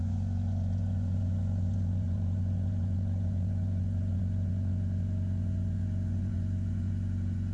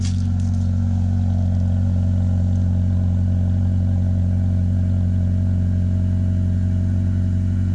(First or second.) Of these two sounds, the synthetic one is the first